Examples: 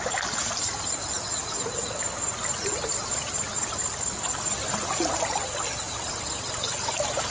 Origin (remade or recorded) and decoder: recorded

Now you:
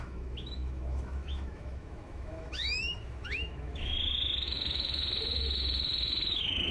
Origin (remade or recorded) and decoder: remade, autoencoder, DAC-VAE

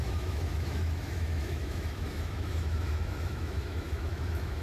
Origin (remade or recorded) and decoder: remade, autoencoder, DAC-VAE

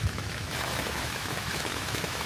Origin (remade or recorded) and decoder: remade, autoencoder, DAC-VAE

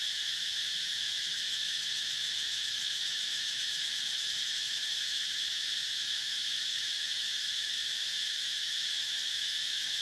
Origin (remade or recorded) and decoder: remade, autoencoder, DAC-VAE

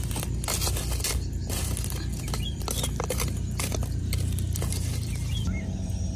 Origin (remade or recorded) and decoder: recorded